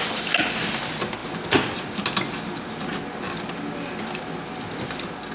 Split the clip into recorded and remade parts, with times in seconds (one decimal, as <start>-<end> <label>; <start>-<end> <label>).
0.0-5.3 recorded